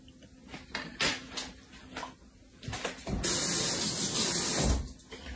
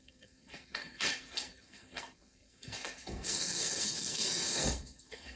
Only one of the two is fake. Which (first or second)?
second